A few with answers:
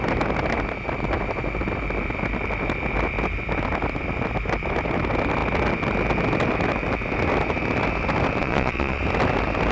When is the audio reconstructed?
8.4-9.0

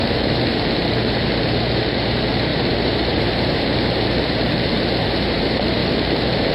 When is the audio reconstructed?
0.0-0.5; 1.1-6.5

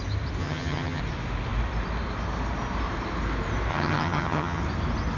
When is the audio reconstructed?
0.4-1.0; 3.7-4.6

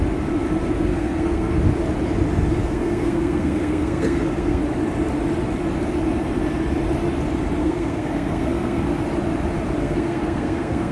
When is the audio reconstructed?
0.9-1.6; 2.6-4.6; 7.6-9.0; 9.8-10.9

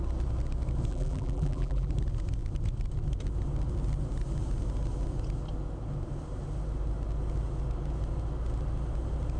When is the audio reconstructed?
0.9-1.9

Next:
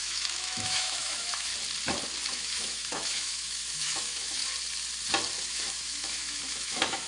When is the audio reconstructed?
0.0-1.5; 2.3-4.4; 5.5-7.1

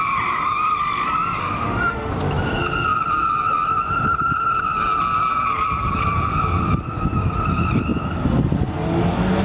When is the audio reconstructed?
1.4-2.1